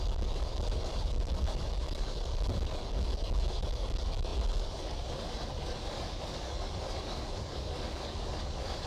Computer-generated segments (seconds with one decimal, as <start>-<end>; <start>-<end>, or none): 0.0-8.9